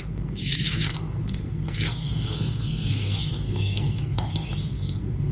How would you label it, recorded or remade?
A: remade